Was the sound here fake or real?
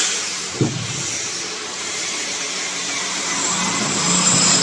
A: real